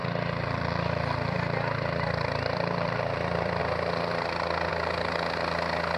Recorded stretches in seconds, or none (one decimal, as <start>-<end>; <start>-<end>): 3.6-6.0